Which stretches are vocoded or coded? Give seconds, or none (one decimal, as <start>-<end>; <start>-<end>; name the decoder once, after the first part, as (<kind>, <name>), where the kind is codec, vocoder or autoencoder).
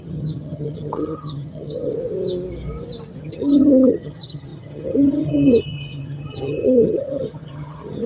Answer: 0.0-1.9 (vocoder, HiFi-GAN); 3.2-8.1